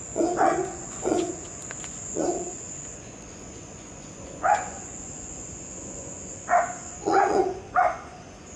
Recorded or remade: remade